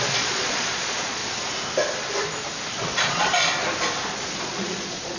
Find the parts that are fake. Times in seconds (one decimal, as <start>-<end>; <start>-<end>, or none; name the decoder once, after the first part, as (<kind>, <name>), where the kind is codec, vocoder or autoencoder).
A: 0.0-1.2 (vocoder, Vocos); 2.7-3.3; 4.1-5.2